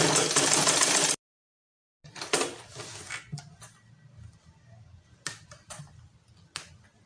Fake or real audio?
real